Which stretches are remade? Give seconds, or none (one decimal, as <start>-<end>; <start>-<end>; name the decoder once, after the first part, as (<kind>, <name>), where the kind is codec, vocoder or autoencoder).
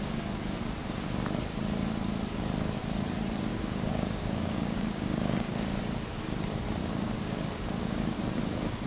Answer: 3.5-5.8 (codec, DAC); 6.8-8.2